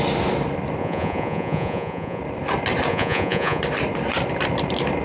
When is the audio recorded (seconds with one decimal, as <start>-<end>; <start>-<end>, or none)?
0.0-0.8; 2.2-2.9; 3.6-5.0